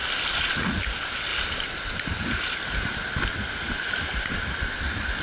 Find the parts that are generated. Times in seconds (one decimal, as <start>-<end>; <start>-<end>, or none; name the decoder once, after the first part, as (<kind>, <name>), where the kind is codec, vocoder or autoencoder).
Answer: 1.3-2.7 (vocoder, BigVGAN v2); 3.4-4.3